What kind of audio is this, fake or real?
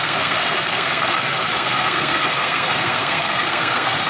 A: fake